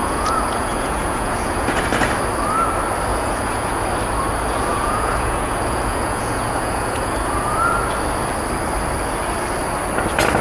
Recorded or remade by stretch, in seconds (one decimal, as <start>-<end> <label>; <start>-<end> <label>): 0.0-1.8 remade; 1.8-3.1 recorded; 3.1-3.8 remade; 3.8-4.7 recorded; 4.7-7.6 remade; 7.6-10.4 recorded